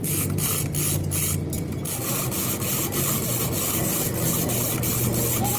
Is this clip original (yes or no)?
yes